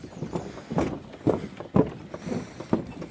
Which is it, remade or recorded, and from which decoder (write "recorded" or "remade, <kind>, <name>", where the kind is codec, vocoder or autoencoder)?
recorded